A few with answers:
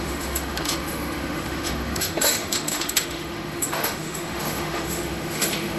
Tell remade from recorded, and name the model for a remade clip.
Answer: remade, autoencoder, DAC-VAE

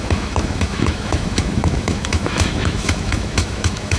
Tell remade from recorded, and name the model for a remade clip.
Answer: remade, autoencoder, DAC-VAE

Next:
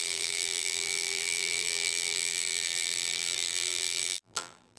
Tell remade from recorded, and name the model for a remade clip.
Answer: remade, vocoder, BigVGAN v2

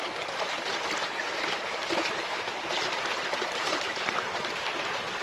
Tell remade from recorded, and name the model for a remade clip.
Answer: recorded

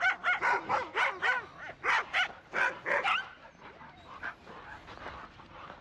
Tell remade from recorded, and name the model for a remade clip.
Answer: recorded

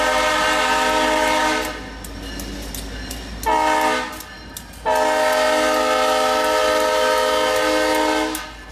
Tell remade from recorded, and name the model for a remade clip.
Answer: recorded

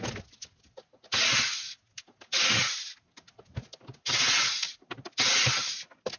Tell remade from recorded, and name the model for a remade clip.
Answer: recorded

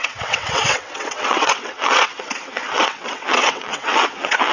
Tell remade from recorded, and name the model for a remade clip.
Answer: remade, vocoder, WaveNeXt